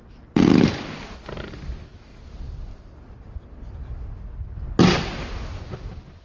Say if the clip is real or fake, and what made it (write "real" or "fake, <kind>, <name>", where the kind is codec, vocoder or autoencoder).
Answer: real